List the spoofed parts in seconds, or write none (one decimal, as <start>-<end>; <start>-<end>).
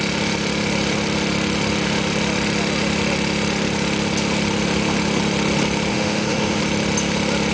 5.9-6.6